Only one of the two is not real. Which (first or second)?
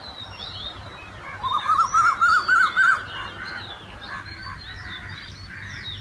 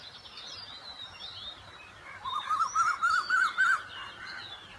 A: second